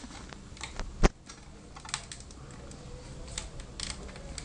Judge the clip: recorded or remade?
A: recorded